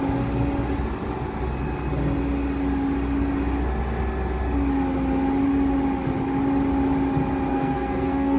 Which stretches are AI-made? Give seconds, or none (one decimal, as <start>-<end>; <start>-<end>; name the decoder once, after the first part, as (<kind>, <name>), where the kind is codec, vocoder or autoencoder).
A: 7.5-8.4 (codec, SNAC)